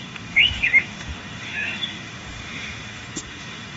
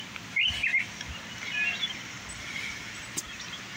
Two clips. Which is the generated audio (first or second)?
first